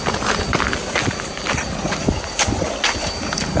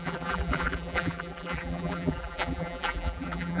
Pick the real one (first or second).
first